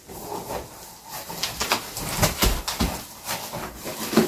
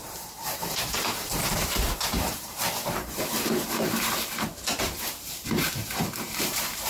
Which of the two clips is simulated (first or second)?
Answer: second